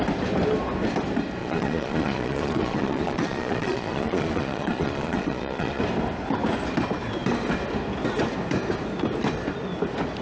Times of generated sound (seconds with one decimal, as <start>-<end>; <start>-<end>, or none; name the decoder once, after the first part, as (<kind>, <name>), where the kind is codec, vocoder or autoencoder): 1.4-5.8 (vocoder, Vocos)